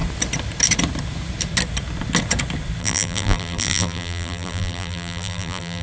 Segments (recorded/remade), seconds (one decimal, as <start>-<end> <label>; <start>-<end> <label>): 0.0-2.8 recorded; 2.8-5.8 remade